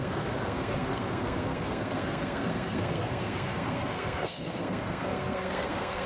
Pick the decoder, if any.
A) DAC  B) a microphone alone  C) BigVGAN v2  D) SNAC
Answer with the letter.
D